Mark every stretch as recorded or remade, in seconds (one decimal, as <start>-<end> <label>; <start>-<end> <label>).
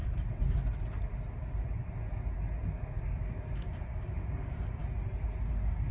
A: 0.0-2.7 recorded; 2.7-4.8 remade; 4.8-5.5 recorded; 5.5-5.9 remade